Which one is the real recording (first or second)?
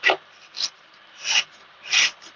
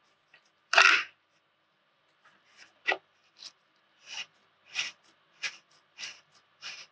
first